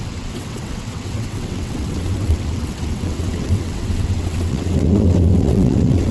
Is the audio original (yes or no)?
no